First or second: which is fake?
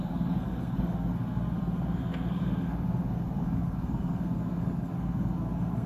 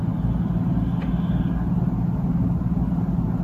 first